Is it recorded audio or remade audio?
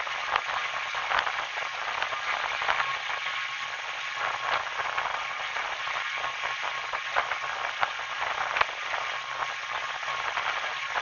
recorded